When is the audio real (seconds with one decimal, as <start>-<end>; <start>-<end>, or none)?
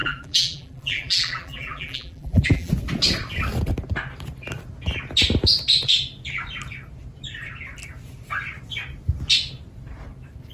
2.7-10.5